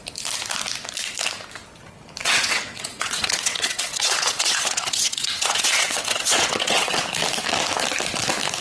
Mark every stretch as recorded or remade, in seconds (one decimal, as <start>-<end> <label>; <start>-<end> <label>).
0.0-2.2 recorded; 2.2-7.0 remade; 7.0-8.6 recorded